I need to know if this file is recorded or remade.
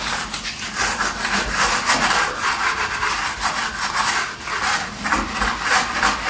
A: recorded